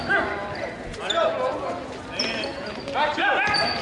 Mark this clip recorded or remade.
recorded